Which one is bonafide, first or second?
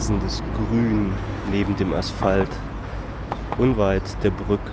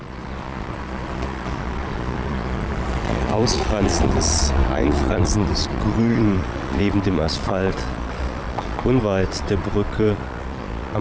first